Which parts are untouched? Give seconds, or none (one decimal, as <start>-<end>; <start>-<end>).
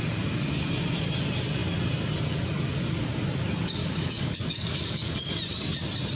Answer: 0.0-3.8; 5.2-6.2